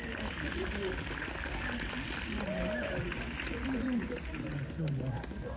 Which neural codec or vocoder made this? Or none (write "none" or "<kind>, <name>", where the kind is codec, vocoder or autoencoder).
none